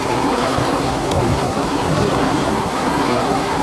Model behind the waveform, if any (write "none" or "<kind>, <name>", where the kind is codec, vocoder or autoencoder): codec, SNAC